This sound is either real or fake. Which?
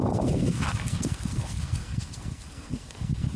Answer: fake